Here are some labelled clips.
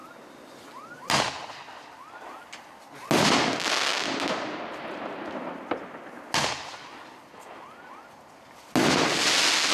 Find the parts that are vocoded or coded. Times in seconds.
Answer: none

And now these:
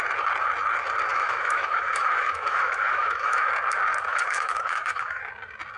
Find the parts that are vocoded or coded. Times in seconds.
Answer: 1.1-3.5; 4.1-5.2

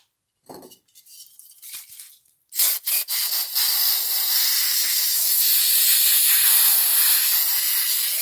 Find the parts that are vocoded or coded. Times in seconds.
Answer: 4.6-5.5

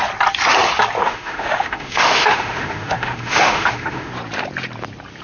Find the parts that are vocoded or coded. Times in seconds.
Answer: 1.0-4.1

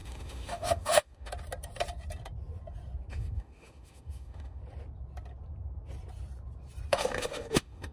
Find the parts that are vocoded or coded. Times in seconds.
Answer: 0.0-1.3; 3.1-4.6; 6.9-7.9

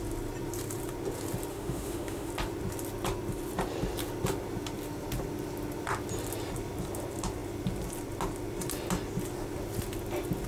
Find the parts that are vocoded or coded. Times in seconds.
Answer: 1.5-2.3

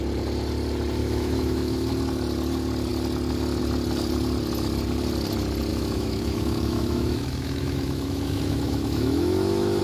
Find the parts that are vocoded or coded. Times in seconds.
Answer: 1.0-1.9; 5.7-9.8

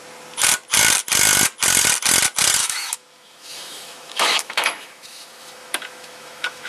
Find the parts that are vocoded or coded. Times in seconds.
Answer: 2.6-6.7